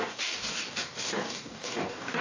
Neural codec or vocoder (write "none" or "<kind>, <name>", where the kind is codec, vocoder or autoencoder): codec, DAC